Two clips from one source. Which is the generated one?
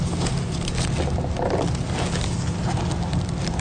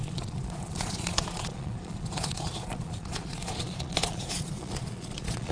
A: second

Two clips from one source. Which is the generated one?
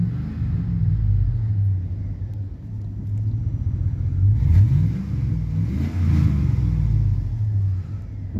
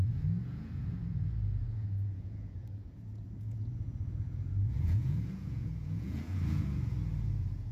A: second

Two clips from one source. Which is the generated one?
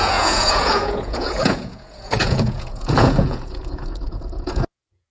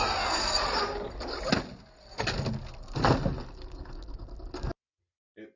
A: first